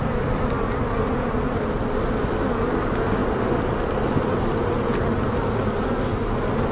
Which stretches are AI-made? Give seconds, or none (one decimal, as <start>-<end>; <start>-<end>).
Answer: none